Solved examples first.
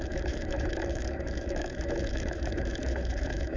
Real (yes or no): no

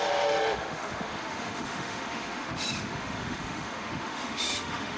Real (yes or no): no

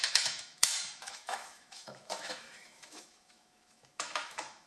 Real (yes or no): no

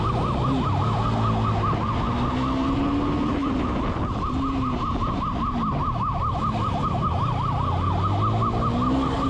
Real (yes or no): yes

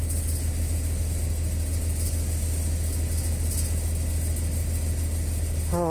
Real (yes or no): yes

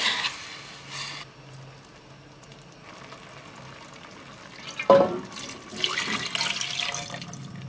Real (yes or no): yes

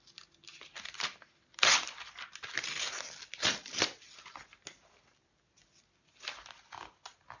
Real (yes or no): yes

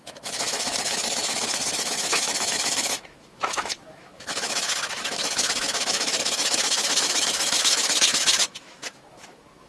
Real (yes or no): no